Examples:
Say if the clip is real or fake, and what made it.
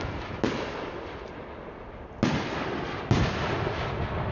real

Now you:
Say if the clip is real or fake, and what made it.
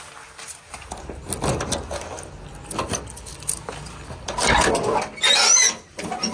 real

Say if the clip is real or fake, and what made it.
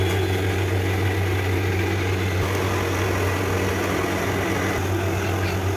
real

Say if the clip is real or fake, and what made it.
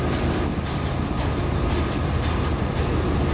real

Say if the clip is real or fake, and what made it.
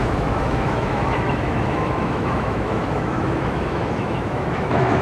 fake, autoencoder, DAC-VAE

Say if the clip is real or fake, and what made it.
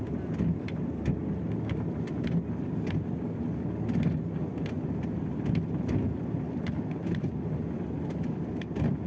real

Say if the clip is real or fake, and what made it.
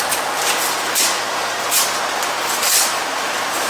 real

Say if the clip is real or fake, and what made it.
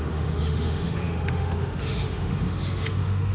fake, autoencoder, DAC-VAE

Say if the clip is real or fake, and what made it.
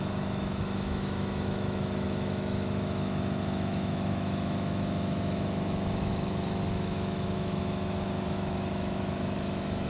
fake, autoencoder, DAC-VAE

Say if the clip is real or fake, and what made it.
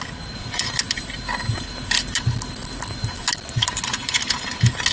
real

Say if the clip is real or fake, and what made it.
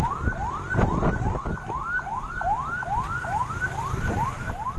real